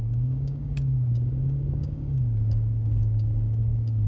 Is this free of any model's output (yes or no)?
no